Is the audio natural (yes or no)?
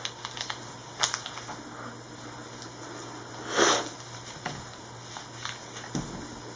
yes